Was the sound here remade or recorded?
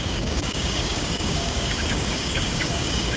remade